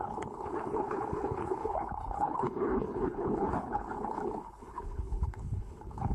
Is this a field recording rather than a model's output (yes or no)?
no